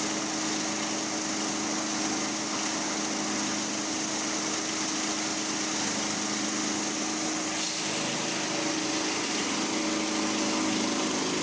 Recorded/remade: recorded